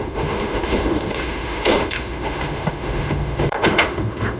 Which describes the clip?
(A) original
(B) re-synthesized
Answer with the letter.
B